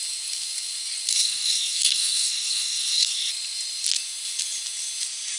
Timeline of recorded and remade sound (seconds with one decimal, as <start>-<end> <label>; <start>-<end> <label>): 0.0-1.1 recorded; 1.1-3.3 remade; 3.3-5.4 recorded